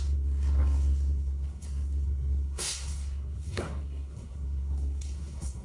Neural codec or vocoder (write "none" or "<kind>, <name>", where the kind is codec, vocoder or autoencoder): codec, SNAC